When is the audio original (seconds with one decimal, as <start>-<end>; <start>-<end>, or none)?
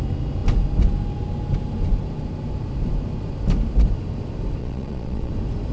0.0-4.6; 5.3-5.7